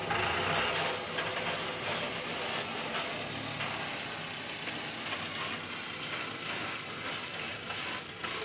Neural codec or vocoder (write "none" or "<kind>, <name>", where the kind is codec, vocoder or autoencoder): none